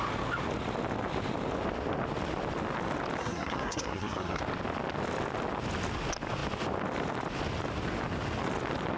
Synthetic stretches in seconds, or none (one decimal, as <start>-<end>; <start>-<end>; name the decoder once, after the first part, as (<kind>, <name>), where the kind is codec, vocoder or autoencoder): 3.2-4.4 (codec, SNAC)